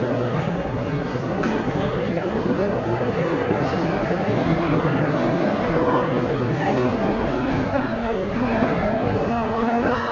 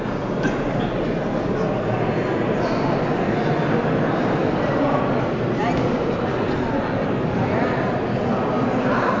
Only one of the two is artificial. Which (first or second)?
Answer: first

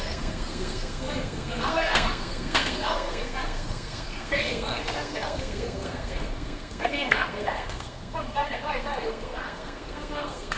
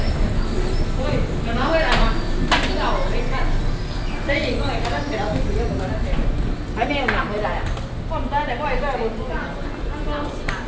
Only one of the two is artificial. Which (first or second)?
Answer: first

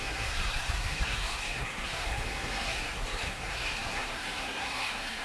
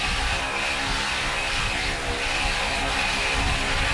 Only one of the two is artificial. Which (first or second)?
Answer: first